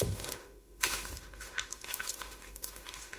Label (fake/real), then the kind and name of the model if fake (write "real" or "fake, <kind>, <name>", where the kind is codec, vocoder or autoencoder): fake, autoencoder, DAC-VAE